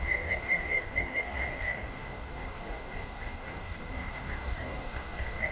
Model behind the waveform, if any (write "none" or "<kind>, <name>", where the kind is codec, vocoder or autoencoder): codec, DAC